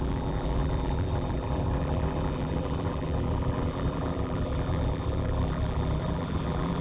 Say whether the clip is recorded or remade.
remade